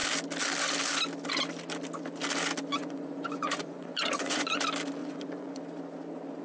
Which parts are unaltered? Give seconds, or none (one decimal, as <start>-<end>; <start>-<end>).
0.0-2.7; 4.6-5.0; 5.6-6.4